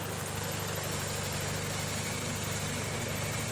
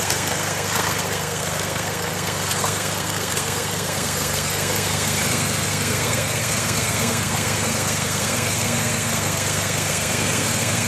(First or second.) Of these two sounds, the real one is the first